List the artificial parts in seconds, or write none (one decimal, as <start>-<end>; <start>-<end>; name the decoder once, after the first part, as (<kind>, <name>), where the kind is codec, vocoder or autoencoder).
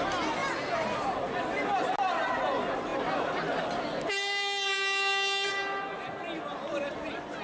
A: none